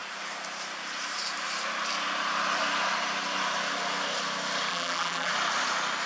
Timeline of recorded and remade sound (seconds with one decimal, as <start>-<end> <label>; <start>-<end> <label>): 0.0-4.7 recorded; 4.7-5.3 remade; 5.3-6.1 recorded